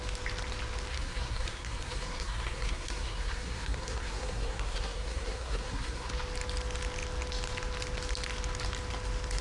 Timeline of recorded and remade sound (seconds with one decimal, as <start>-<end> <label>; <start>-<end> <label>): 0.0-0.9 recorded; 0.9-6.1 remade; 6.1-9.4 recorded